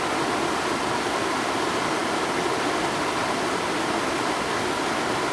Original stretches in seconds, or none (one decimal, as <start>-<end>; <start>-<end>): 0.0-5.3